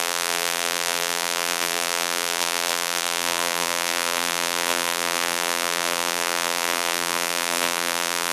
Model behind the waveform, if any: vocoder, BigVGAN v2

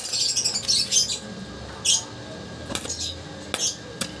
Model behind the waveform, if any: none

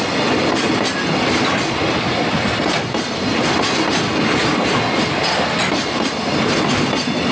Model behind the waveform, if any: none